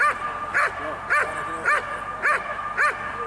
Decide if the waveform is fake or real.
real